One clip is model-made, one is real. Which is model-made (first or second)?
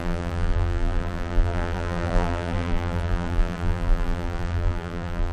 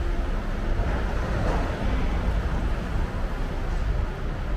first